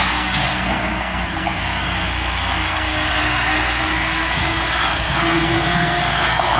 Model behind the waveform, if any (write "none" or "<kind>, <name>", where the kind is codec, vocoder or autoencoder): codec, SNAC